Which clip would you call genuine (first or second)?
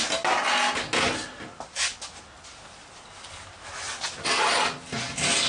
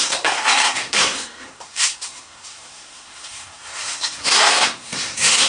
first